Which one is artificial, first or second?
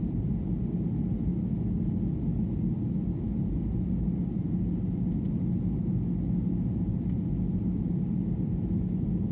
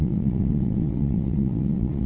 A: second